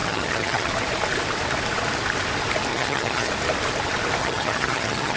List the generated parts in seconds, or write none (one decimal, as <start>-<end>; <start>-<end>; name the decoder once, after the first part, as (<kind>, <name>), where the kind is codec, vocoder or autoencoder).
0.0-0.7 (vocoder, HiFi-GAN); 2.7-3.3; 4.2-5.2